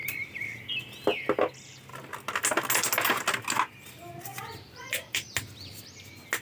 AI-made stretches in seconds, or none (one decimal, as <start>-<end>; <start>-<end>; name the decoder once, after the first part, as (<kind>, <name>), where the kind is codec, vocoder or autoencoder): 0.0-0.7 (vocoder, BigVGAN v2); 4.3-5.3